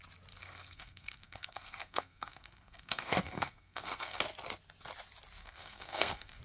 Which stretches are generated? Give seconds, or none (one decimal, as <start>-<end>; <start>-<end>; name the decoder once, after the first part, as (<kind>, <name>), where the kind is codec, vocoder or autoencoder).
0.4-4.2 (codec, SNAC); 5.4-6.4